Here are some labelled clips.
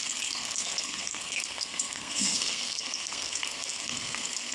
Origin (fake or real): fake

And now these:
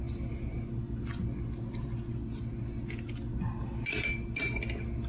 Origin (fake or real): real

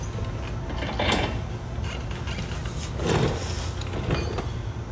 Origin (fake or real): real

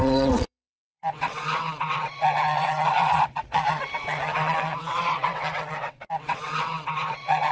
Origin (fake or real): fake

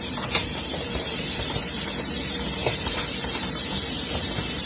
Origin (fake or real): fake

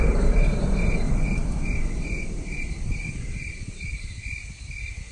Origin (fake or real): real